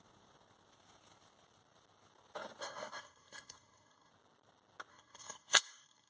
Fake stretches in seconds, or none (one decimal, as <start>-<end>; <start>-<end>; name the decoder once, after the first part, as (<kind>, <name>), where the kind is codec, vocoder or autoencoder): 2.6-4.1 (codec, SNAC); 4.9-6.1